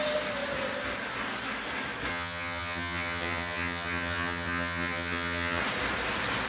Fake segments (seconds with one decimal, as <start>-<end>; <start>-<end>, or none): 2.1-5.6